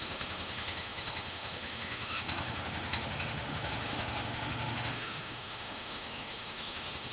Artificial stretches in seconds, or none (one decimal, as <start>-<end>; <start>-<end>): 0.0-7.1